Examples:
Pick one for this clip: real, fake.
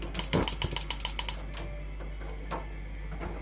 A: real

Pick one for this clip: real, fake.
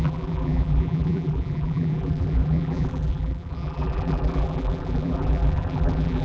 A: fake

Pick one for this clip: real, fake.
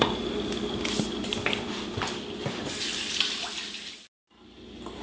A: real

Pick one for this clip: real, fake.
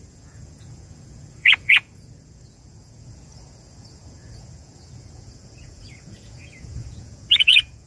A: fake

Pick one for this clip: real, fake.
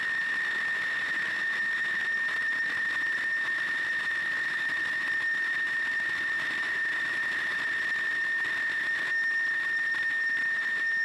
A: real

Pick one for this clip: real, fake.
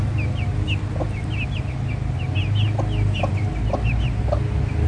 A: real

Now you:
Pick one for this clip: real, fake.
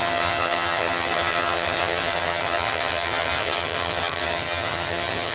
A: fake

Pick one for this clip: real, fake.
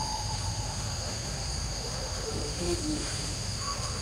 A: fake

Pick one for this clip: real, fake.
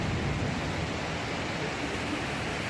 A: real